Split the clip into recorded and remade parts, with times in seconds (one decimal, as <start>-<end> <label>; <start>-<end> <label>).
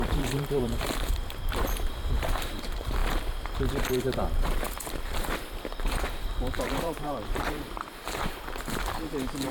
0.0-9.5 remade